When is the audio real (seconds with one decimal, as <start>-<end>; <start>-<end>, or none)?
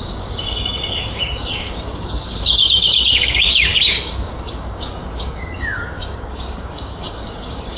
none